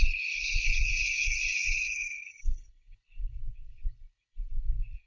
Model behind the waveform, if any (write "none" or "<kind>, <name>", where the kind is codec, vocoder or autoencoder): codec, HILCodec